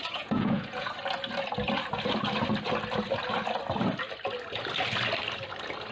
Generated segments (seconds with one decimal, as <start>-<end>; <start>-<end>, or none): 0.0-0.9